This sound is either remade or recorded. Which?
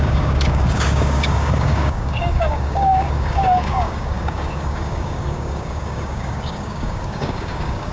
remade